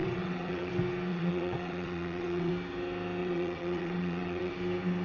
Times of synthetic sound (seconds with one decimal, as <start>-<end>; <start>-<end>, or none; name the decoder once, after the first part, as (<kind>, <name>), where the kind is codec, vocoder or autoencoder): 0.0-0.7 (vocoder, WaveNeXt); 1.1-2.5; 3.2-4.5